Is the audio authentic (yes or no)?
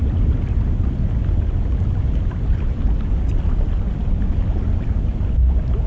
yes